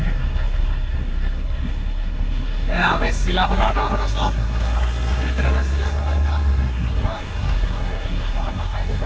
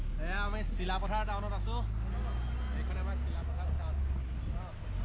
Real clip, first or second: second